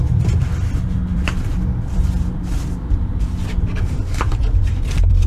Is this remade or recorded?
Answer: remade